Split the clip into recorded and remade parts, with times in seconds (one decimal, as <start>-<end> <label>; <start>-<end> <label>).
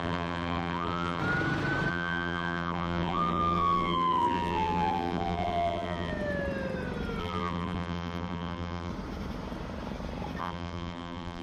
0.0-1.2 remade; 1.2-1.9 recorded; 1.9-6.1 remade; 6.1-7.2 recorded; 7.2-8.9 remade; 8.9-10.4 recorded; 10.4-11.4 remade